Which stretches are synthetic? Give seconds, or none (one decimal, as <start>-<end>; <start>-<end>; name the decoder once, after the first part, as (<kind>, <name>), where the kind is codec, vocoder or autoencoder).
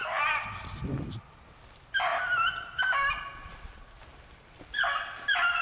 2.1-2.8 (vocoder, BigVGAN v2)